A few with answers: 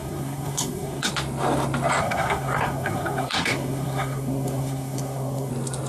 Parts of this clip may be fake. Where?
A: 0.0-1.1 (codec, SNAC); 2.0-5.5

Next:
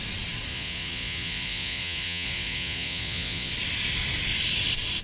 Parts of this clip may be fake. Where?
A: 0.5-3.5 (vocoder, Vocos)

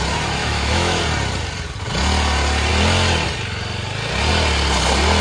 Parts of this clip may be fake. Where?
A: 0.4-1.0 (autoencoder, DAC-VAE)

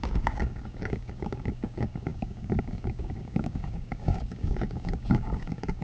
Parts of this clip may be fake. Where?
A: 0.0-5.8 (codec, DAC)

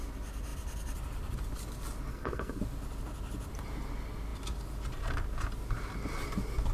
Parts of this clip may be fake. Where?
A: 2.1-2.6 (codec, SNAC)

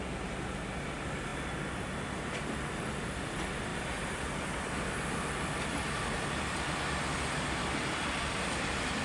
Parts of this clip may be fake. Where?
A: none

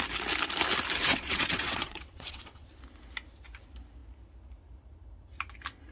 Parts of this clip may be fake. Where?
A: 1.0-2.7 (vocoder, WaveNeXt)